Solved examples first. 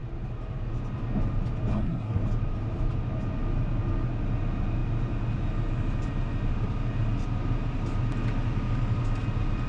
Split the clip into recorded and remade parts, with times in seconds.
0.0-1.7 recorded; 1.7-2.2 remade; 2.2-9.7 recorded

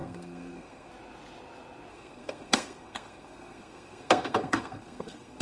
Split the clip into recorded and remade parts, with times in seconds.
0.0-0.9 remade; 0.9-1.9 recorded; 1.9-5.4 remade

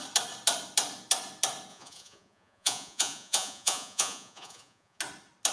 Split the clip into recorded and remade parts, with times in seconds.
0.0-1.7 recorded; 1.7-5.0 remade; 5.0-5.5 recorded

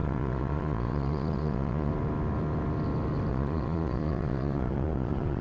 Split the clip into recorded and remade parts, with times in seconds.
0.0-1.9 remade; 1.9-3.3 recorded; 3.3-5.4 remade

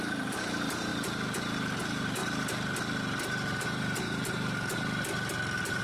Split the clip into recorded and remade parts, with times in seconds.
0.0-0.9 remade; 0.9-1.8 recorded; 1.8-2.2 remade; 2.2-5.8 recorded

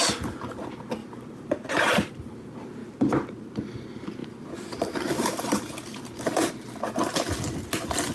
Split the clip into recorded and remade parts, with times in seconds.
0.0-1.0 recorded; 1.0-2.1 remade; 2.1-2.8 recorded; 2.8-3.5 remade; 3.5-4.2 recorded; 4.2-6.5 remade; 6.5-8.1 recorded

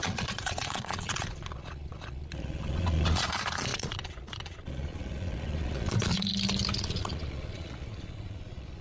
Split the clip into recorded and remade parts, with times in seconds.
0.0-6.3 remade; 6.3-6.8 recorded; 6.8-8.8 remade